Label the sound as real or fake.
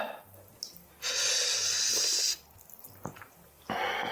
real